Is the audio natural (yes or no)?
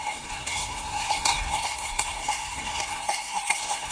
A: no